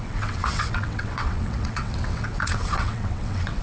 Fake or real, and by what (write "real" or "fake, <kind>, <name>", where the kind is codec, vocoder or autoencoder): fake, vocoder, WaveNeXt